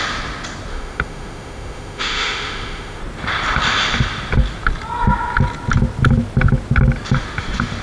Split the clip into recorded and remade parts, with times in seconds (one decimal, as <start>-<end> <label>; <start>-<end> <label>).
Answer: 0.0-0.7 recorded; 0.7-3.0 remade; 3.0-7.8 recorded